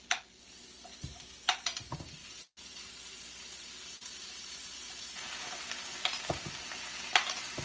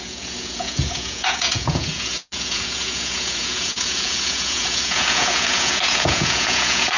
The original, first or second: first